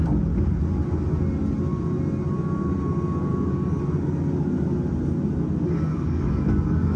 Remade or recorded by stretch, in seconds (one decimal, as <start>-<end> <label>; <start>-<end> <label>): 0.0-3.3 recorded; 3.3-3.8 remade; 3.8-5.9 recorded; 5.9-7.0 remade